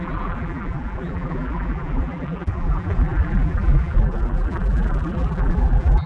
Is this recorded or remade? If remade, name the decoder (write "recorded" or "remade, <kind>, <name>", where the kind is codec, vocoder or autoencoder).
remade, vocoder, BigVGAN v2